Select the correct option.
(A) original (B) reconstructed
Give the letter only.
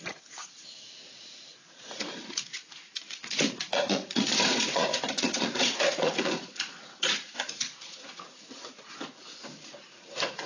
B